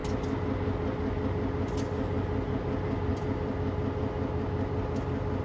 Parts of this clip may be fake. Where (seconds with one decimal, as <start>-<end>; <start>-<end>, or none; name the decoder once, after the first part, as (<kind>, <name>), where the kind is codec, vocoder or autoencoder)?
none

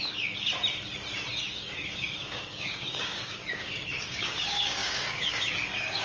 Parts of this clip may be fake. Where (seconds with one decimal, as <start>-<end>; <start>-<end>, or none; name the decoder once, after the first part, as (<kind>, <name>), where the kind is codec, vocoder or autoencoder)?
0.0-0.5 (codec, DAC); 1.4-6.0

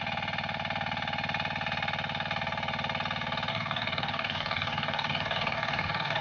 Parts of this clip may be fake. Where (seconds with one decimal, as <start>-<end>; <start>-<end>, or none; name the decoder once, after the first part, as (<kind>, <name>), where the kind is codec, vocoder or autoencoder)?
3.5-6.2 (codec, DAC)

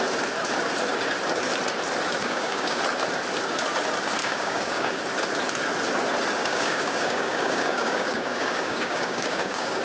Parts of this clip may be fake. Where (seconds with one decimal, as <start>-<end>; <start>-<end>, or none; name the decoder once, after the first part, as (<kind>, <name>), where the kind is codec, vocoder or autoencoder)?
2.2-2.8 (codec, DAC); 4.2-5.0; 6.4-9.8